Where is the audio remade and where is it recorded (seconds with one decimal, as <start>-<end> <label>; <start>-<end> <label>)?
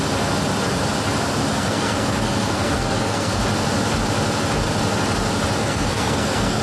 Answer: 0.0-1.5 recorded; 1.5-3.4 remade; 3.4-5.6 recorded; 5.6-6.6 remade